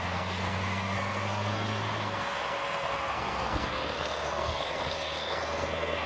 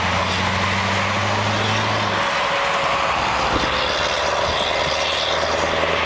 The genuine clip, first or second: second